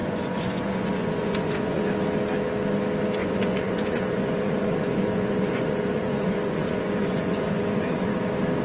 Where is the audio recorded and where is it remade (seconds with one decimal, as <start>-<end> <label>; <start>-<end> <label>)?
0.0-1.8 remade; 1.8-3.2 recorded; 3.2-8.1 remade; 8.1-8.6 recorded